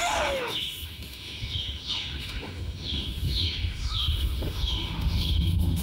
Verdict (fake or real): fake